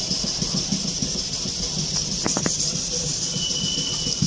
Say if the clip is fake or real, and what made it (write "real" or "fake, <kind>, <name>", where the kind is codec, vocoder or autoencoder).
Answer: real